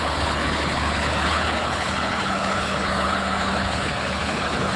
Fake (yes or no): yes